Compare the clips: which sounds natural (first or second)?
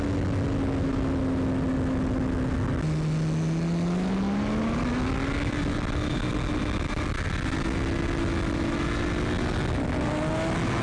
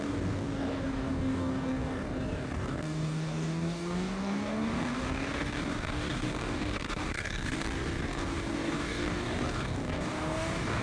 first